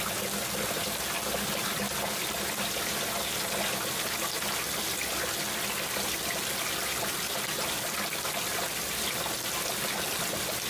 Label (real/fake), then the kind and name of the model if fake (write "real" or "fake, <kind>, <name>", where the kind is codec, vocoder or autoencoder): real